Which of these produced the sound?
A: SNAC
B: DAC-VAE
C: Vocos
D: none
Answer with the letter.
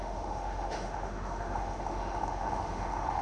B